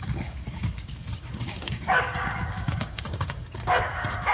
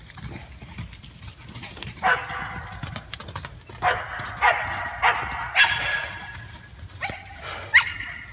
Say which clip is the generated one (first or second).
first